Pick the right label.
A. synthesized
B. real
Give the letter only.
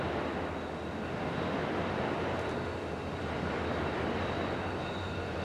B